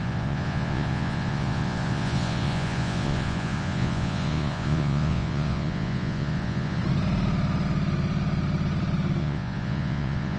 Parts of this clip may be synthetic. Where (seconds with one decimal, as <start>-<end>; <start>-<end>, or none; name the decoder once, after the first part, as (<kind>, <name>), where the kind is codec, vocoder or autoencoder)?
0.0-6.8 (vocoder, Vocos); 9.2-10.4